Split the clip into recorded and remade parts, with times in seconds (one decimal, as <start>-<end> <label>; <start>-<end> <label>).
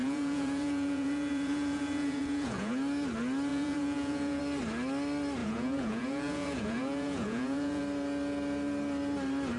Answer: 0.0-2.7 remade; 2.7-3.5 recorded; 3.5-4.4 remade; 4.4-5.4 recorded; 5.4-7.8 remade; 7.8-9.6 recorded